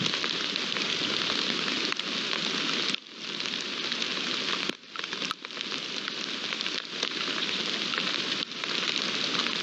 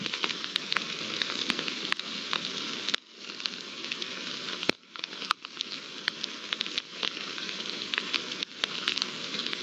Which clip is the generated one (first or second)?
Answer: second